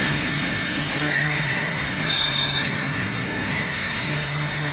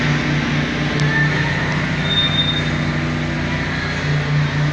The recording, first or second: second